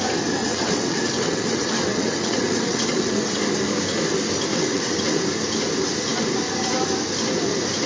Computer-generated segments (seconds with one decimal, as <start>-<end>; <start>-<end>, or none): 0.4-3.4; 4.5-5.0